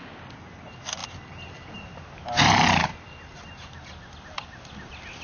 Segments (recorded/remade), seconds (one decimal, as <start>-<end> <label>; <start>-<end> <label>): 0.0-5.2 recorded